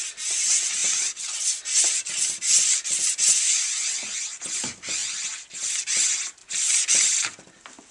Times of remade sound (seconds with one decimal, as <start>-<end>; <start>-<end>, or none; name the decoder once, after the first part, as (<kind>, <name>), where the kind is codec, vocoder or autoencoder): none